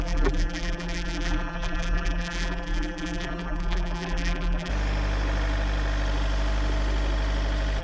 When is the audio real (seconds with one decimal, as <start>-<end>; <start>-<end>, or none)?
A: 4.7-7.8